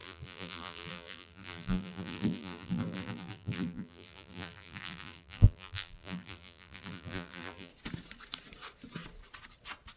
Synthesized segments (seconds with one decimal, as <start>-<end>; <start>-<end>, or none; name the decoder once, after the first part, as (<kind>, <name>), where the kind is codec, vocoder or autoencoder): 0.0-7.7 (vocoder, BigVGAN v2)